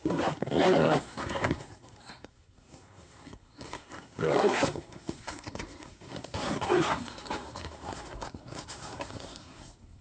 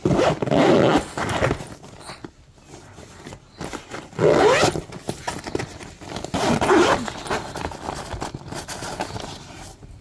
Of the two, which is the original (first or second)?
second